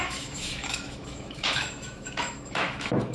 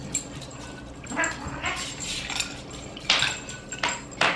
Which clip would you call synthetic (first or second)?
first